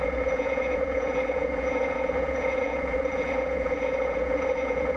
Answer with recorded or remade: remade